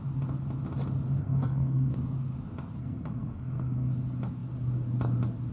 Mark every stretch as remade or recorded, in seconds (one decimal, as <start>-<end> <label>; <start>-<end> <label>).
0.0-1.2 recorded; 1.2-1.9 remade; 1.9-2.8 recorded; 2.8-3.9 remade; 3.9-5.5 recorded